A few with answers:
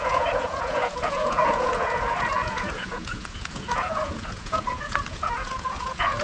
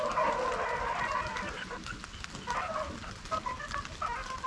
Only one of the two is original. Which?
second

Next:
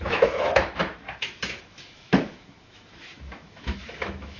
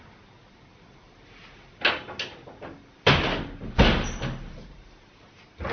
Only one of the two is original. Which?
second